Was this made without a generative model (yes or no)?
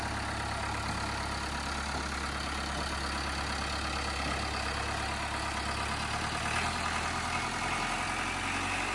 yes